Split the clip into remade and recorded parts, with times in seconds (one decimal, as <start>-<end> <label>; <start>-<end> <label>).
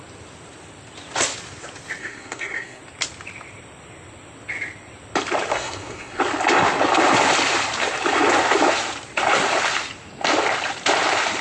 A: 0.0-2.0 recorded; 2.0-2.8 remade; 2.8-5.5 recorded; 5.5-6.2 remade; 6.2-11.4 recorded